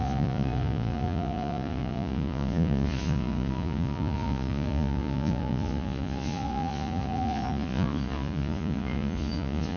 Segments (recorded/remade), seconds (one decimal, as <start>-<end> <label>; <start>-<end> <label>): 0.0-9.8 remade